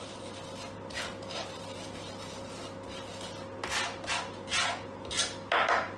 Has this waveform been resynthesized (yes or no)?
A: no